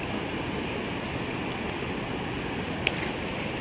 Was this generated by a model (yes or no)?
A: no